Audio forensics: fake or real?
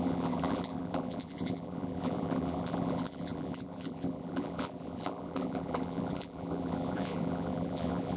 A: fake